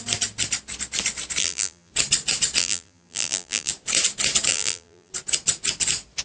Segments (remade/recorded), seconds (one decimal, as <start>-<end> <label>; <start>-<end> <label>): 0.0-1.4 recorded; 1.4-1.9 remade; 1.9-2.6 recorded; 2.6-3.7 remade; 3.7-4.5 recorded; 4.5-5.1 remade; 5.1-6.2 recorded